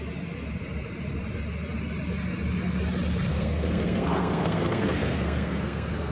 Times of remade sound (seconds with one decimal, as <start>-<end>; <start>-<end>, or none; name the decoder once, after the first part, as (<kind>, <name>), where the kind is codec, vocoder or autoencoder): 3.3-6.1 (codec, SNAC)